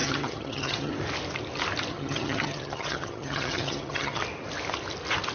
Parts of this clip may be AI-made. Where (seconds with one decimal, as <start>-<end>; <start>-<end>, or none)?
0.0-0.9; 1.9-4.2